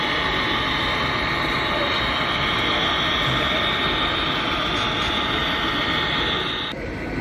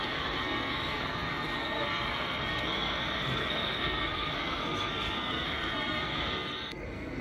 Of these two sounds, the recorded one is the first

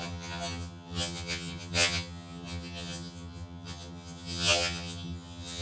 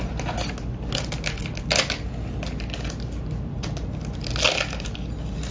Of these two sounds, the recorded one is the second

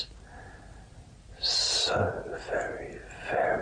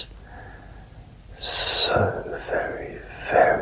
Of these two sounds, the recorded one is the second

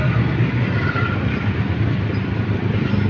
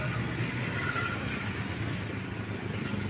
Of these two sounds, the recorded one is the second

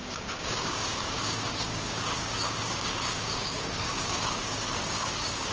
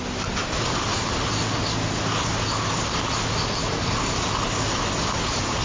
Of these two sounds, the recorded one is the second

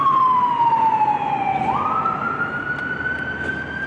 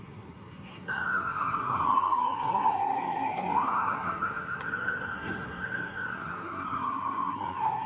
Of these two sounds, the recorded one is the first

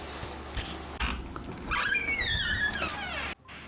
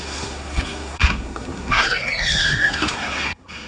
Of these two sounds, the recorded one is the first